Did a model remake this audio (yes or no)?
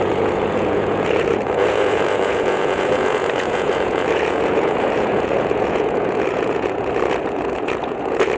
yes